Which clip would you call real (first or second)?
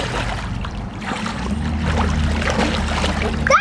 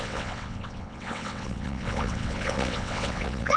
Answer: first